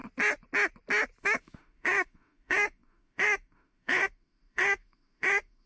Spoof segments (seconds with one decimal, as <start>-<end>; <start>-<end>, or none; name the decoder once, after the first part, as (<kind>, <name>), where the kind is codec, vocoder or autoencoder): 1.2-5.7 (autoencoder, DAC-VAE)